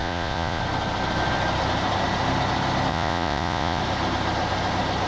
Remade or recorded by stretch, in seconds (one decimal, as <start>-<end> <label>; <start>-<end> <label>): 0.0-0.6 remade; 0.6-2.9 recorded; 2.9-3.8 remade; 3.8-5.1 recorded